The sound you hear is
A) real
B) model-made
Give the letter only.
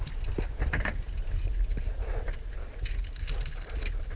A